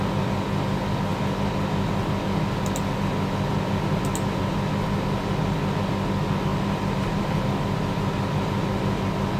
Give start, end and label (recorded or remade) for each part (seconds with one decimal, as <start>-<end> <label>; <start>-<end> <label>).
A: 0.0-6.5 recorded; 6.5-7.2 remade; 7.2-9.4 recorded